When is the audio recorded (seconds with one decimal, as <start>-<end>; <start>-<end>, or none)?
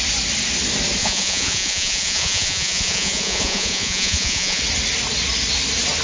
0.0-1.0; 4.6-6.0